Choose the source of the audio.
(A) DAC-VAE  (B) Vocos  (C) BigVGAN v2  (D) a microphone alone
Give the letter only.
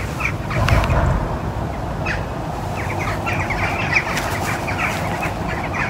D